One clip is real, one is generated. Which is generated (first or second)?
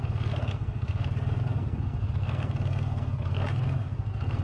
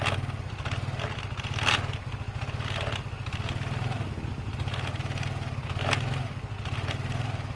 first